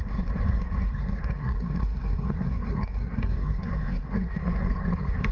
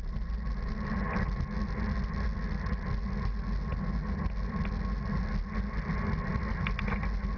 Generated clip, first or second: first